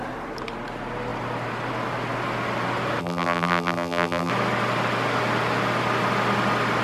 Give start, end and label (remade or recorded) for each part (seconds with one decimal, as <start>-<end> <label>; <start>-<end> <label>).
0.0-3.0 recorded; 3.0-4.3 remade; 4.3-6.8 recorded